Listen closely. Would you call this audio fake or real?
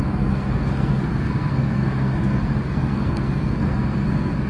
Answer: fake